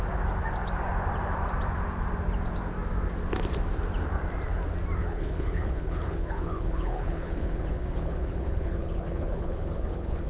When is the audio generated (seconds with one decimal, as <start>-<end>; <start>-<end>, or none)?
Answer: 5.0-10.3